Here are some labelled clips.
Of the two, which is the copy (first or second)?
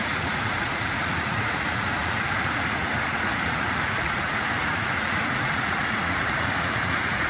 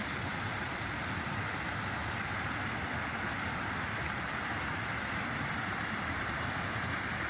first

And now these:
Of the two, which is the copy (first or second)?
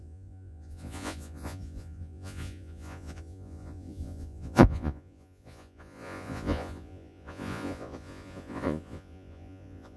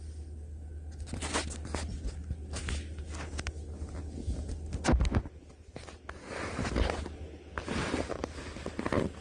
first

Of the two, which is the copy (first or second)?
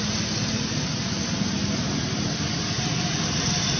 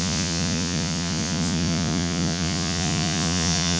second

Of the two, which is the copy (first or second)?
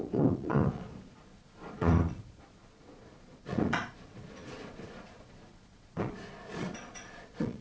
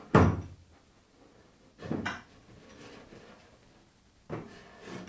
first